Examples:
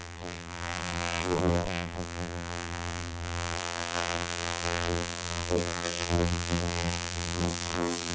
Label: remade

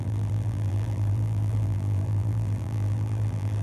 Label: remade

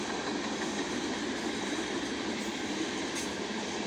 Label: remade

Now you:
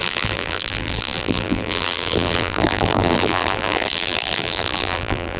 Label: remade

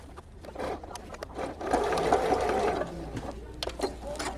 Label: recorded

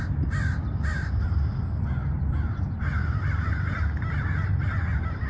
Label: remade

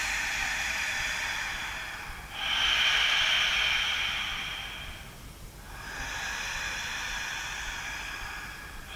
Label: remade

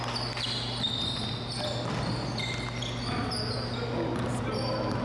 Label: recorded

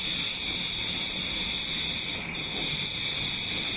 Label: remade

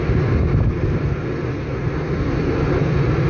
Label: remade